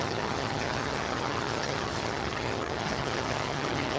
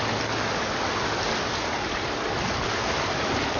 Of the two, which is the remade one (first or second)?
first